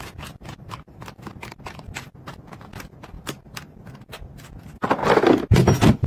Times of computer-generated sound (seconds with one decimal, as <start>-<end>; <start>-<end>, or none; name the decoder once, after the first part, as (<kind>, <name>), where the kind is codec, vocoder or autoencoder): none